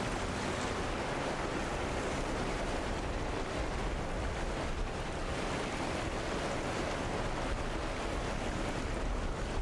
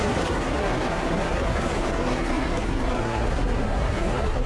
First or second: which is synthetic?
second